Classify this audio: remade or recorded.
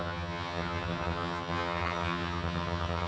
remade